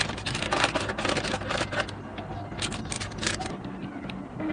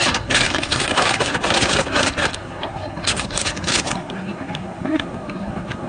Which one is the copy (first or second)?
second